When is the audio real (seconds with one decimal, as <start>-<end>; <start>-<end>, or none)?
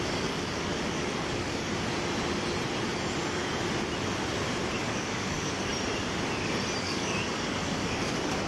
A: 1.7-4.8; 5.7-6.8